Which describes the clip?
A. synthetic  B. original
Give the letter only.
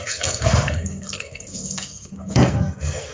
A